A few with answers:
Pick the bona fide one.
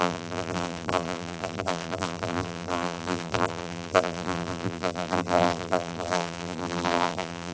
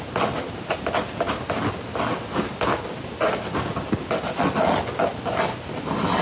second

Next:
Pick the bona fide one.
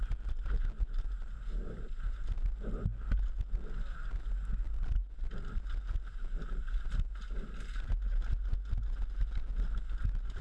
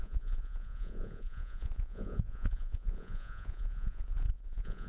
first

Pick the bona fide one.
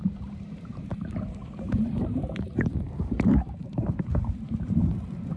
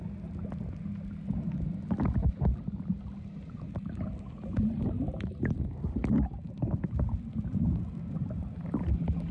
second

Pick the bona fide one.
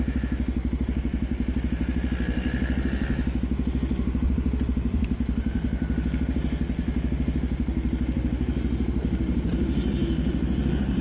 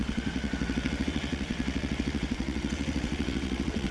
first